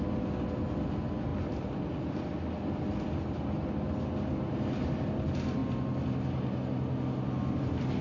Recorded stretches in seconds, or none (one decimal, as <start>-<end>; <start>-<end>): 0.0-8.0